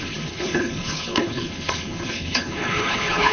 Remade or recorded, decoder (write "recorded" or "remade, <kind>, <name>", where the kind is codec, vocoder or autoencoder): remade, codec, HILCodec